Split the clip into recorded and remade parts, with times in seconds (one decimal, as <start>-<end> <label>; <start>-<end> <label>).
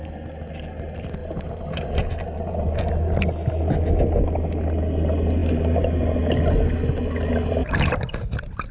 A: 0.0-1.2 recorded; 1.2-2.7 remade; 2.7-7.6 recorded; 7.6-8.2 remade; 8.2-8.7 recorded